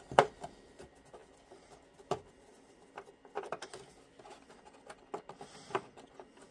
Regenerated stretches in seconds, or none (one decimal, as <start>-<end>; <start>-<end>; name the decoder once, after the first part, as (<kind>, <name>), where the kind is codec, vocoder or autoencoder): none